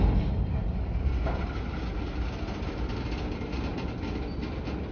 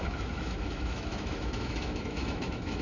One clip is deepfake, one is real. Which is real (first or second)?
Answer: first